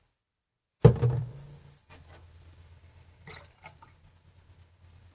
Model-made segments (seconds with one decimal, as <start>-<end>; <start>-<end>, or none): none